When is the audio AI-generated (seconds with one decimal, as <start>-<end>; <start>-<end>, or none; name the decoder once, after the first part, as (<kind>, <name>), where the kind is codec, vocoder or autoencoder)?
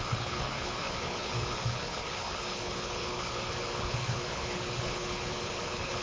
0.0-6.0 (codec, HILCodec)